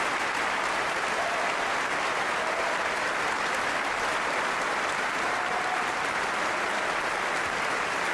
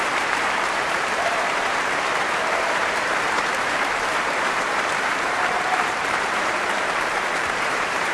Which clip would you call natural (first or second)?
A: first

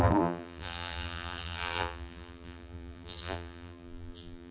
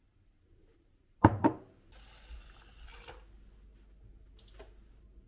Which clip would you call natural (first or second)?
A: second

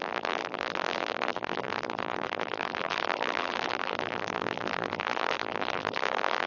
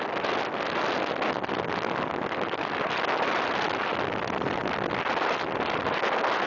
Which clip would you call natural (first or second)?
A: second